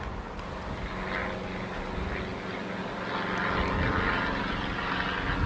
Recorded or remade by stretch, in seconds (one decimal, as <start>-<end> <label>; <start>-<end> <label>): 0.0-5.5 recorded